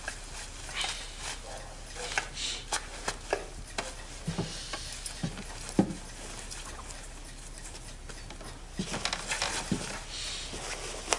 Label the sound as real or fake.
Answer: real